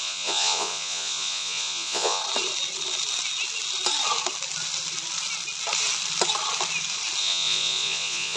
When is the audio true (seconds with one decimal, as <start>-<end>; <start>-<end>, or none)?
2.2-7.2